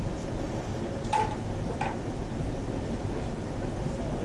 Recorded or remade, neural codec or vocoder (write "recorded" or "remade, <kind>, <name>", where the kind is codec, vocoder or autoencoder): recorded